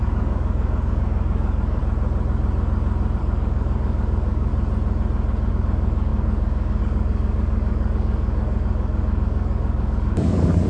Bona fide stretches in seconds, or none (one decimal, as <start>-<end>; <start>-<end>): 1.8-3.2; 4.5-5.5